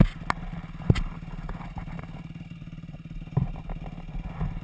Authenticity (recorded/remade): recorded